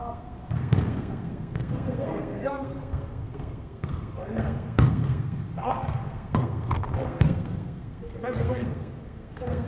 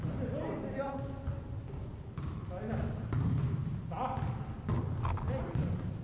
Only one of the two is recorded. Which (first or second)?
second